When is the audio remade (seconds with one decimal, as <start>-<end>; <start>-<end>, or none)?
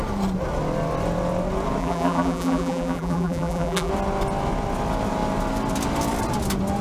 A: 1.8-3.9